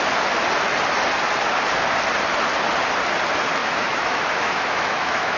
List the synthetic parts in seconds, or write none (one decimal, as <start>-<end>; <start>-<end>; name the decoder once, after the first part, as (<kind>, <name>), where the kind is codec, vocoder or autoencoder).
3.6-5.4 (autoencoder, DAC-VAE)